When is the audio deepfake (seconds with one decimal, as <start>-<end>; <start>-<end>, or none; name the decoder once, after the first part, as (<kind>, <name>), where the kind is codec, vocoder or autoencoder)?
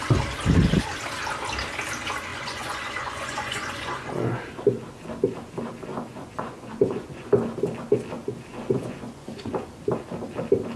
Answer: 2.3-4.4 (vocoder, Vocos); 5.9-7.3; 8.5-9.5